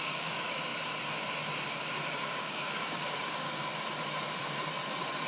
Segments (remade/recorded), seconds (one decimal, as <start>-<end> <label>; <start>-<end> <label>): 0.0-0.7 remade; 0.7-2.3 recorded; 2.3-3.7 remade; 3.7-5.3 recorded